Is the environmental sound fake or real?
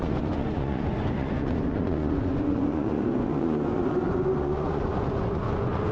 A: fake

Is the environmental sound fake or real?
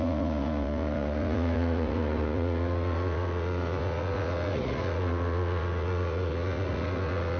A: fake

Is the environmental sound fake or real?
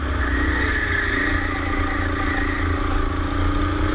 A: real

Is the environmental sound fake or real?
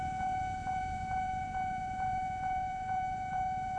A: fake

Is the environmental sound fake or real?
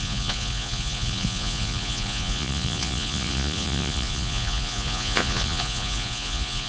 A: fake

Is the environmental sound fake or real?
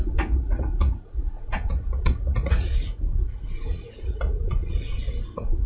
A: fake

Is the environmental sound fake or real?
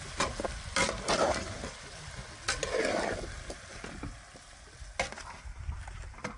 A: real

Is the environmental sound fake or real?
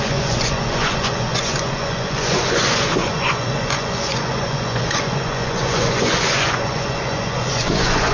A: fake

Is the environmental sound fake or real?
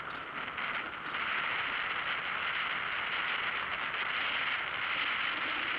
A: real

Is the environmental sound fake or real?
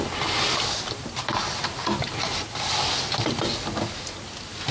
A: real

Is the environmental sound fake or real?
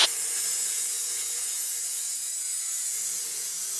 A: fake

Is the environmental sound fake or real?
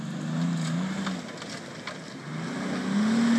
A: real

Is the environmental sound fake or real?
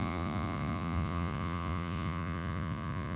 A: fake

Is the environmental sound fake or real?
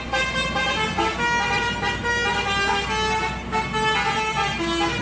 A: real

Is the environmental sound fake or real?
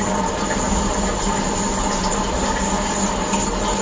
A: real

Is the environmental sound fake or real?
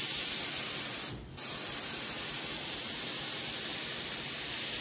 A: real